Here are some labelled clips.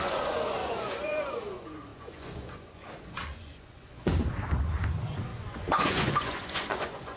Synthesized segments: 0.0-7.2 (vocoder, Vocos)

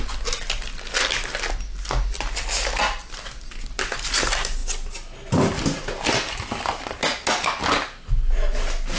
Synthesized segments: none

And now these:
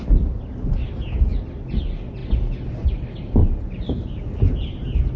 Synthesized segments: 3.4-4.2 (vocoder, BigVGAN v2)

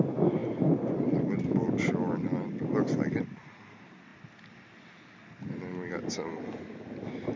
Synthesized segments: none

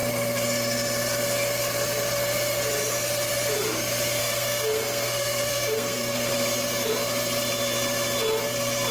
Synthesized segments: 4.2-6.3 (codec, SNAC)

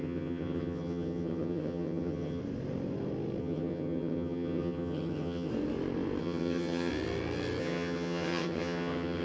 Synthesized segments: 0.0-2.4 (vocoder, HiFi-GAN); 3.4-5.5; 6.2-6.9; 7.6-9.2